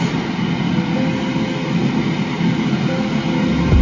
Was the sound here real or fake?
real